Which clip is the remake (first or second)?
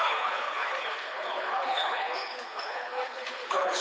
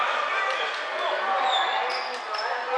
first